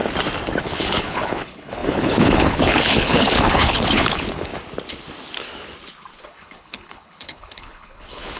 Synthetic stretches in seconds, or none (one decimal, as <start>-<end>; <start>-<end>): 0.6-4.5; 6.2-8.4